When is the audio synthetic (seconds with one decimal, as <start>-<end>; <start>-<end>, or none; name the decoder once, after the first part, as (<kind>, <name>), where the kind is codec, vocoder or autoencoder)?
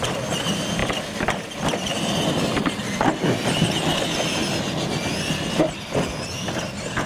none